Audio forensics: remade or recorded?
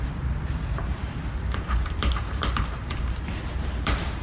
remade